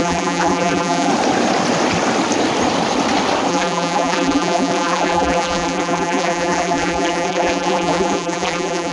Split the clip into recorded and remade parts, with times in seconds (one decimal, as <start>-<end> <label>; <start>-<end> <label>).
0.0-1.1 remade; 1.1-3.5 recorded; 3.5-8.9 remade